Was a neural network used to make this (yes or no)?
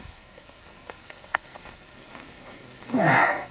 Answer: yes